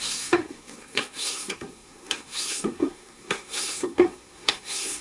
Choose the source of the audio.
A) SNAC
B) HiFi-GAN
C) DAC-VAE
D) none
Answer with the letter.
A